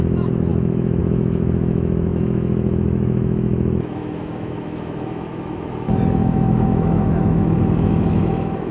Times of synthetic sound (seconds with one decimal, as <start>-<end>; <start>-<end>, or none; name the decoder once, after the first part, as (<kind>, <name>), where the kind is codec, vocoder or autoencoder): 0.0-8.7 (autoencoder, DAC-VAE)